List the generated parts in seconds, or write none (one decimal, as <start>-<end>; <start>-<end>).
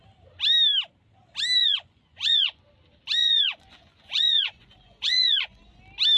1.6-2.6; 3.2-5.8